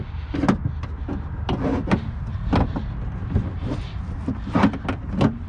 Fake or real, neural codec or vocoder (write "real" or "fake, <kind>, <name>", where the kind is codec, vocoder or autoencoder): real